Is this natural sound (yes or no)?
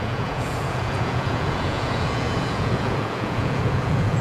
no